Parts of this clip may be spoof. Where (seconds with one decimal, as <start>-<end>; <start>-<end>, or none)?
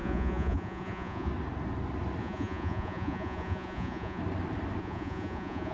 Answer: 0.0-1.3; 2.2-4.2; 4.8-5.7